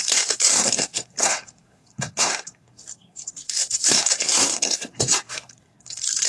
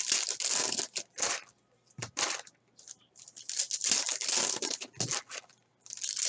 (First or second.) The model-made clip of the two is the first